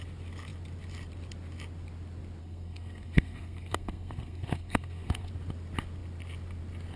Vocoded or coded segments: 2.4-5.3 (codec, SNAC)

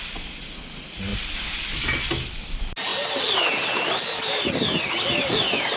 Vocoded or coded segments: 2.9-3.9 (vocoder, BigVGAN v2)

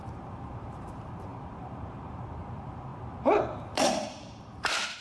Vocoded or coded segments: 0.0-5.0 (vocoder, BigVGAN v2)

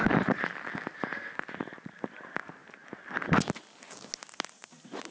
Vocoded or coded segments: none

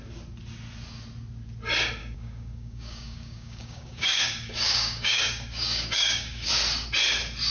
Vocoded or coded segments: 2.0-6.5 (codec, DAC)

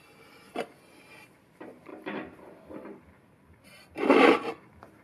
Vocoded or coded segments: none